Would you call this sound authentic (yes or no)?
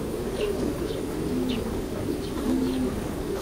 no